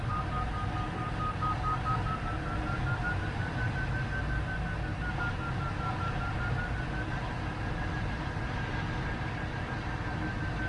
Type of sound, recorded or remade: recorded